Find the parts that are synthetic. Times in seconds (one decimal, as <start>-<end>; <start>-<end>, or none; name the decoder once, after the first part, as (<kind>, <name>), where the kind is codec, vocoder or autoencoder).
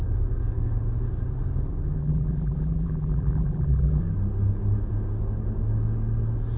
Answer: 2.0-4.0 (vocoder, BigVGAN v2)